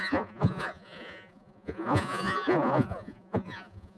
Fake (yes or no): yes